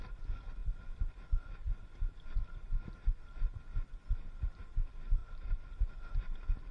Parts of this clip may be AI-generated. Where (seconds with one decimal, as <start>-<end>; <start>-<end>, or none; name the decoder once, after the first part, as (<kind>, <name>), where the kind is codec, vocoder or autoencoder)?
none